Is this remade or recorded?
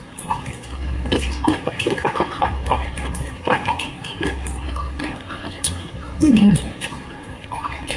remade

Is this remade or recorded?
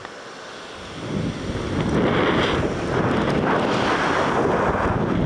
recorded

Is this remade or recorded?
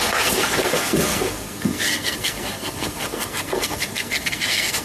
remade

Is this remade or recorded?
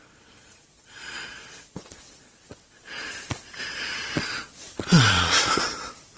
remade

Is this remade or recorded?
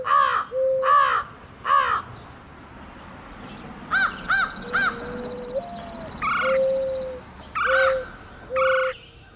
recorded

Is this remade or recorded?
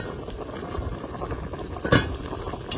recorded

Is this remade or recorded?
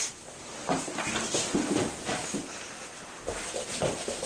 recorded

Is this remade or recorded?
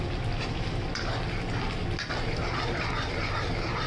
recorded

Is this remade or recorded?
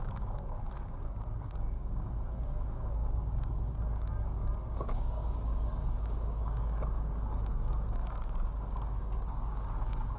remade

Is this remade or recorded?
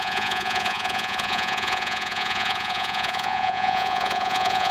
remade